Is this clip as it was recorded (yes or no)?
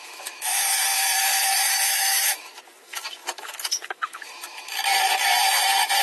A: no